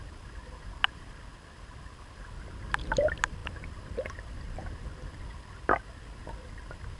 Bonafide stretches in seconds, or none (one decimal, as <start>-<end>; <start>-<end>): 0.0-3.4; 5.3-7.0